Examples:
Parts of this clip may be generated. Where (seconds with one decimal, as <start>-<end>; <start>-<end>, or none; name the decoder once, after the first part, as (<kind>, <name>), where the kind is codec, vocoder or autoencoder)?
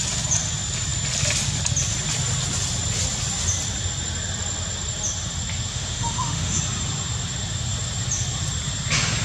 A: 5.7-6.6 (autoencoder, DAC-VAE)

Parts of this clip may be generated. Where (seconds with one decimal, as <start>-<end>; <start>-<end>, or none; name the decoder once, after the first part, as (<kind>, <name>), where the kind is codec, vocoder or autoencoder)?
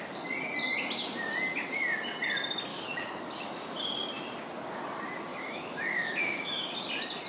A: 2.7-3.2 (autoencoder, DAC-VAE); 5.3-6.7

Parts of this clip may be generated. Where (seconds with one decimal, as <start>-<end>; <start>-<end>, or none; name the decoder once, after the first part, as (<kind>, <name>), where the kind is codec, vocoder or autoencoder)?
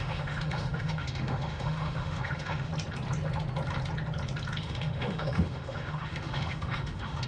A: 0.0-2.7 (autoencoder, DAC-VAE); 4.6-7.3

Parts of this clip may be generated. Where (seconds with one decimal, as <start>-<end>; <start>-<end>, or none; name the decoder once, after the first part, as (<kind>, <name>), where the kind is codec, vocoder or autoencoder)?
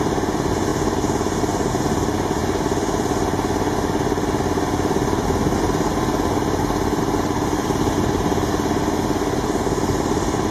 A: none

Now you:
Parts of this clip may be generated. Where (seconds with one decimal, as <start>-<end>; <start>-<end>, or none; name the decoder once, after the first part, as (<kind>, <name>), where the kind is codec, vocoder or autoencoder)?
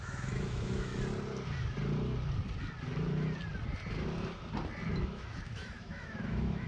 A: 0.0-0.9 (autoencoder, DAC-VAE); 4.9-6.7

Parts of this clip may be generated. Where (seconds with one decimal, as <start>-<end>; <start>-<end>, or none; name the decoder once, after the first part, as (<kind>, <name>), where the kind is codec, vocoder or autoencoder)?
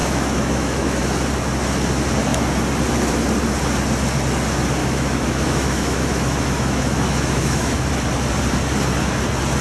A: 0.0-1.0 (autoencoder, DAC-VAE); 4.8-7.9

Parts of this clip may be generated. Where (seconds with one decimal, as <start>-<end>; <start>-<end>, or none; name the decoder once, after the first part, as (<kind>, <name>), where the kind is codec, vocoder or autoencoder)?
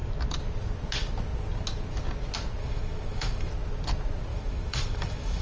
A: 2.6-3.5 (autoencoder, DAC-VAE); 4.3-5.4